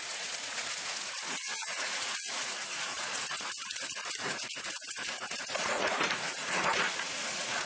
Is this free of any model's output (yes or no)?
no